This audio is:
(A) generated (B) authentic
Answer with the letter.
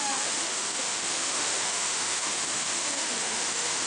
A